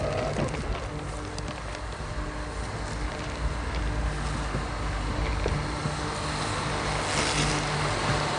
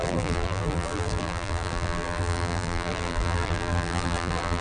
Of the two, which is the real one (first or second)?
first